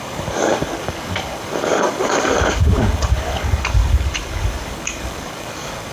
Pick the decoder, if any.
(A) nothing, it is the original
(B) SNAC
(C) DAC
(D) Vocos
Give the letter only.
C